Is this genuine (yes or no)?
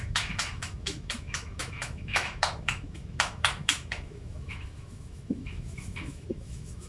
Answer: no